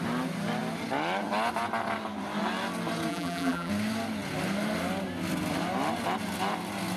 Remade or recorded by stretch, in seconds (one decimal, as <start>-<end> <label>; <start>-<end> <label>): 0.0-3.1 recorded; 3.1-3.7 remade; 3.7-7.0 recorded